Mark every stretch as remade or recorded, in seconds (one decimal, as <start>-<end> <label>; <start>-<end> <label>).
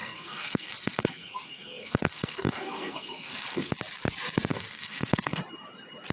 0.0-3.7 remade; 3.7-4.5 recorded; 4.5-5.4 remade; 5.4-6.1 recorded